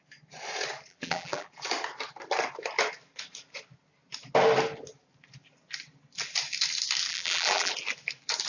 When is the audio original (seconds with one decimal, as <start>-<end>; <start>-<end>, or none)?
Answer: 0.0-0.9; 1.5-7.1; 7.7-8.5